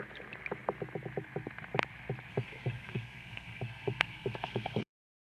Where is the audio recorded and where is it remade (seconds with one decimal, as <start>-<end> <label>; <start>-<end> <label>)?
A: 0.0-2.3 recorded; 2.3-5.2 remade